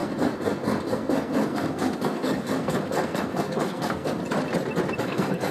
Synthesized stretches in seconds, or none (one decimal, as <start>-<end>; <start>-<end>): 0.0-4.2; 5.0-5.5